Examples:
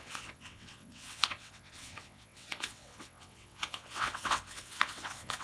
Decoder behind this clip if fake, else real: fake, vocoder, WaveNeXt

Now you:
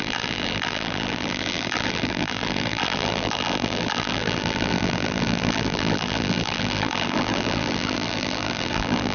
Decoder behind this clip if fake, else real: fake, vocoder, BigVGAN v2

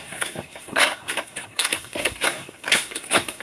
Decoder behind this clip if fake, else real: fake, codec, SNAC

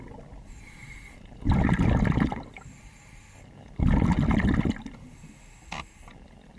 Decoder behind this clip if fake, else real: real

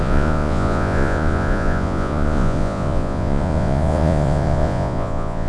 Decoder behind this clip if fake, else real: fake, vocoder, Vocos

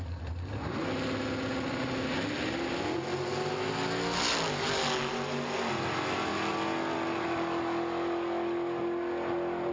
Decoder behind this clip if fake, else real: real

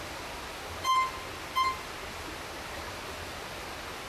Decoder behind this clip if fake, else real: real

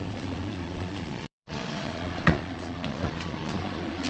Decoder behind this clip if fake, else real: fake, vocoder, Vocos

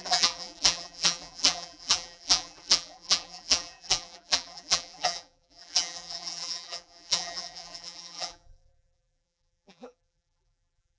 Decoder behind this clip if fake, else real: fake, vocoder, BigVGAN v2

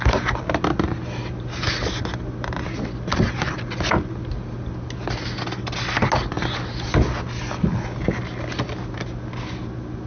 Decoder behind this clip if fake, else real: real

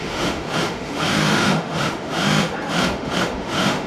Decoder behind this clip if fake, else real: fake, autoencoder, DAC-VAE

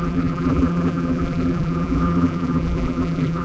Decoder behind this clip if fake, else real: fake, vocoder, BigVGAN v2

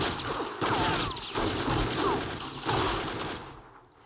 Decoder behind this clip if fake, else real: real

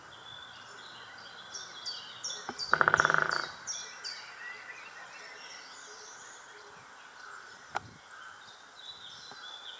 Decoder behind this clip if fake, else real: real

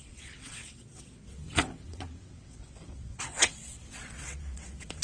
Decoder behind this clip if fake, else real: fake, vocoder, WaveNeXt